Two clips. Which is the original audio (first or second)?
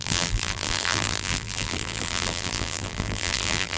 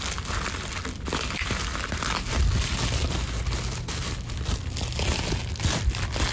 second